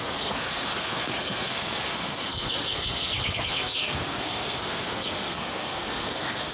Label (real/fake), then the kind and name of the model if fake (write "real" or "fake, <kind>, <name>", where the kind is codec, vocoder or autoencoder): fake, codec, SNAC